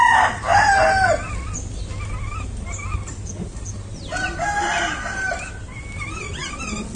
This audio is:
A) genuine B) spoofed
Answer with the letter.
A